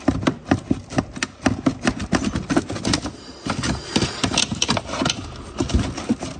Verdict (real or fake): real